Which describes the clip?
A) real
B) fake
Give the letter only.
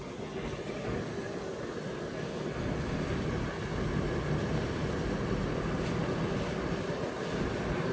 A